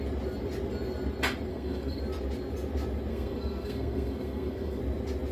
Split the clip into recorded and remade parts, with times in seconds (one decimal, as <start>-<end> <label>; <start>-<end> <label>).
0.0-1.5 recorded; 1.5-2.0 remade; 2.0-3.1 recorded; 3.1-4.8 remade; 4.8-5.3 recorded